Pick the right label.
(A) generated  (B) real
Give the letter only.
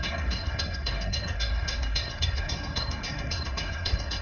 A